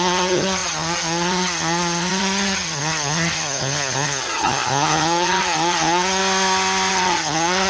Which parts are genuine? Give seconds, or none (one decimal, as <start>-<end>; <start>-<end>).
6.2-6.9